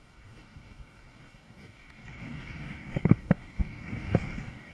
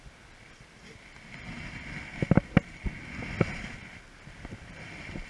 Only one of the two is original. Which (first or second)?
second